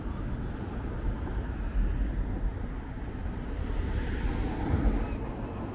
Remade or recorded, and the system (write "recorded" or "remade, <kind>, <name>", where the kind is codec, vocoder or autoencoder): recorded